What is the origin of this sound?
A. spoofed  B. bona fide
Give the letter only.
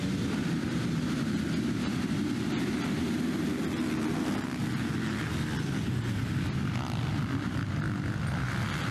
B